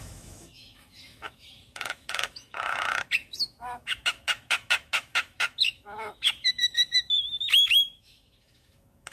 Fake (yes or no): yes